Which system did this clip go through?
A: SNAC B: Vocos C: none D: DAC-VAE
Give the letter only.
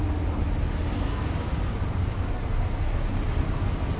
C